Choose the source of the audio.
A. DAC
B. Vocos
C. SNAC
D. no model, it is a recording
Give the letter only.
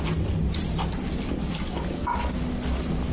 D